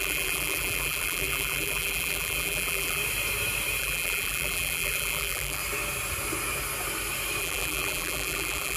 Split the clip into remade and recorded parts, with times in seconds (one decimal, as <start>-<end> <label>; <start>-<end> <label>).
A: 0.0-3.0 remade; 3.0-3.8 recorded; 3.8-5.6 remade; 5.6-7.4 recorded; 7.4-8.8 remade

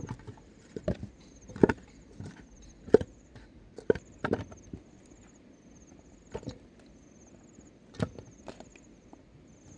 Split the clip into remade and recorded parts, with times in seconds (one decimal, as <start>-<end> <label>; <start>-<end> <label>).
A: 0.0-1.6 recorded; 1.6-6.6 remade; 6.6-8.3 recorded; 8.3-8.9 remade; 8.9-9.8 recorded

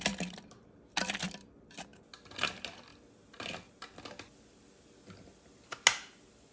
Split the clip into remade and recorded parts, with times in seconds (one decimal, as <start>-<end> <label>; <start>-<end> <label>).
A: 0.0-6.5 recorded

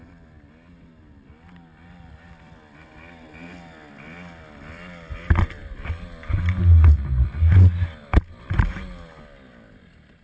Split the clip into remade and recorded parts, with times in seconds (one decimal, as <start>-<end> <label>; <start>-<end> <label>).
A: 0.0-10.2 recorded

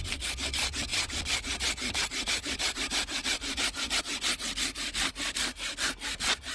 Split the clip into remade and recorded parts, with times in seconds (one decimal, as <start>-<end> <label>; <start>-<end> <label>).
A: 0.0-0.9 recorded; 0.9-4.0 remade; 4.0-6.5 recorded